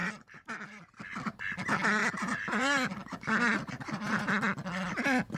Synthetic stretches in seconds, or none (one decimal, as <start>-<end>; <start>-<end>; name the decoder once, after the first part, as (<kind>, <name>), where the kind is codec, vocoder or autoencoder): 0.0-1.0 (vocoder, BigVGAN v2); 2.0-4.3